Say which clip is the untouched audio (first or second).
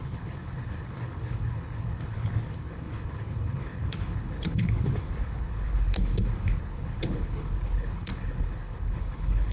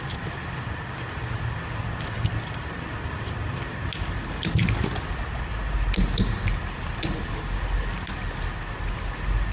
second